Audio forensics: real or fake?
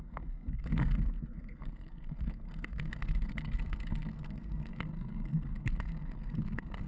fake